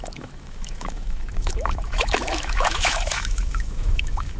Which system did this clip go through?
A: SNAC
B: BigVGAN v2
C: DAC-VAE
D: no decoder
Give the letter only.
C